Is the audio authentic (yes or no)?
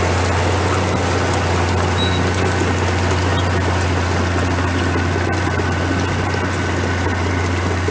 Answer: yes